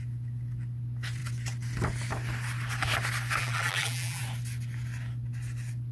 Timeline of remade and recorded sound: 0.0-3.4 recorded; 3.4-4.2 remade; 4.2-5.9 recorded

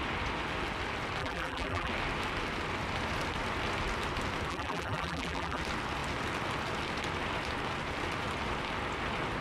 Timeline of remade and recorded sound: 0.0-1.2 recorded; 1.2-1.9 remade; 1.9-4.5 recorded; 4.5-5.6 remade; 5.6-9.4 recorded

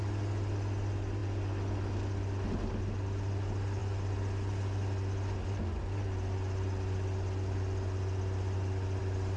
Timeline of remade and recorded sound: 0.0-9.4 recorded

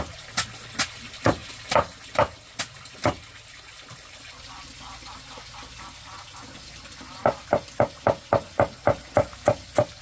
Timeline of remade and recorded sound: 0.0-10.0 recorded

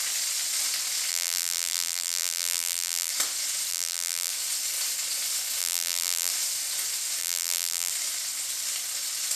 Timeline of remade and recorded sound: 0.0-1.1 recorded; 1.1-3.1 remade; 3.1-3.7 recorded; 3.7-4.3 remade; 4.3-5.6 recorded; 5.6-6.3 remade; 6.3-7.2 recorded; 7.2-7.9 remade; 7.9-9.4 recorded

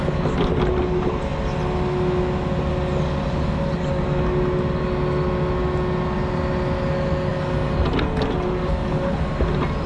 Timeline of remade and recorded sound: 0.0-9.9 recorded

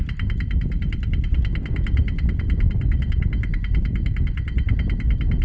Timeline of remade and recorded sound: 0.0-2.0 recorded; 2.0-3.1 remade; 3.1-5.4 recorded